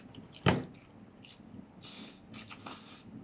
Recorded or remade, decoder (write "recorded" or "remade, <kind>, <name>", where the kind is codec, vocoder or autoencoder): recorded